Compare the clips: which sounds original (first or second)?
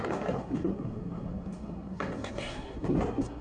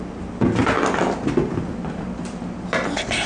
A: second